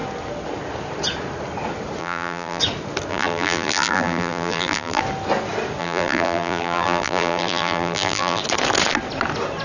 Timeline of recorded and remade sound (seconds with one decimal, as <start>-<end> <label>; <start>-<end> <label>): 0.0-2.0 recorded; 2.0-2.6 remade; 2.6-3.1 recorded; 3.1-5.0 remade; 5.0-5.8 recorded; 5.8-8.4 remade; 8.4-9.6 recorded